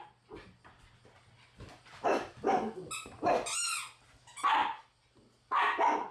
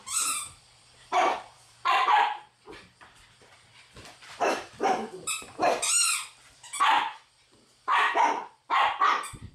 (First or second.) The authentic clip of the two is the first